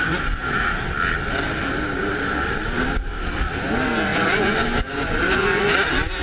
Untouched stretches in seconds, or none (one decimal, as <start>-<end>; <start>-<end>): 0.0-4.1; 5.6-6.2